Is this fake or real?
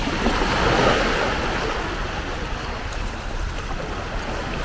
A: real